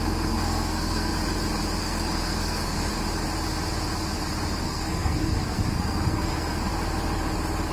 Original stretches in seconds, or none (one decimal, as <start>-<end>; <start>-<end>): 1.1-1.8; 2.9-4.6; 6.7-7.7